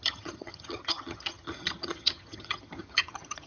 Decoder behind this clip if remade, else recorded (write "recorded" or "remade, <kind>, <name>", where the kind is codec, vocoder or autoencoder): remade, vocoder, HiFi-GAN